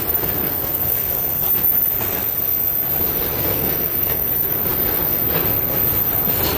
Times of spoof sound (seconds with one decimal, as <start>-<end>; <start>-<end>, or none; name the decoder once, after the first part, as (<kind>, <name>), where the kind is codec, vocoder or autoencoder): 0.4-1.5 (codec, SNAC); 3.5-4.3